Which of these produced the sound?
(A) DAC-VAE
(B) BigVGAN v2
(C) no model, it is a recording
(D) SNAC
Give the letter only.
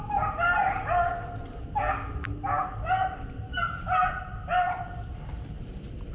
C